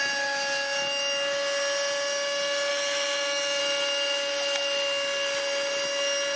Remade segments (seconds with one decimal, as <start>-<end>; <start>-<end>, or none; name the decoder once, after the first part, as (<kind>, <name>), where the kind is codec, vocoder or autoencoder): 2.7-3.6 (autoencoder, DAC-VAE)